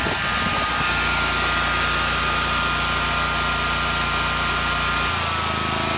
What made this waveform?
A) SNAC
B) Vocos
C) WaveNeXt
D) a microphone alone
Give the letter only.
D